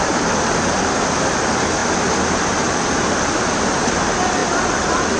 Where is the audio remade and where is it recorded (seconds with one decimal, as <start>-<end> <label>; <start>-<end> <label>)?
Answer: 0.0-5.2 recorded